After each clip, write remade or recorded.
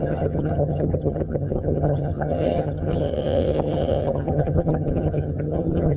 remade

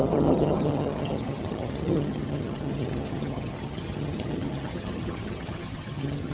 remade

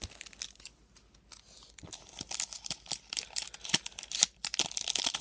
recorded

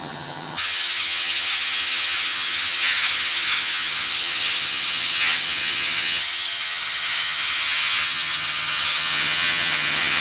remade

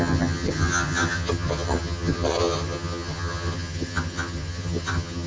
remade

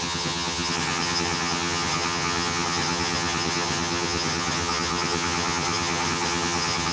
remade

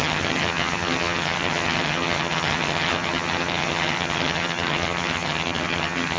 remade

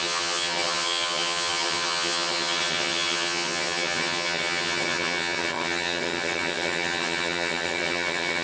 remade